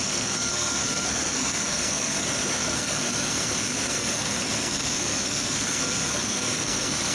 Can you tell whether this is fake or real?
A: fake